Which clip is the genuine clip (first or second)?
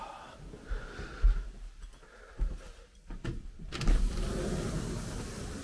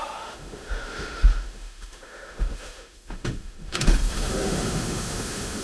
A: first